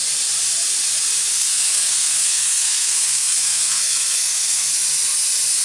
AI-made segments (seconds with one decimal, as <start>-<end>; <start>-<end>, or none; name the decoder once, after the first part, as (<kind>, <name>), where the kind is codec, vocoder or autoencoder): 1.3-4.7 (codec, SNAC)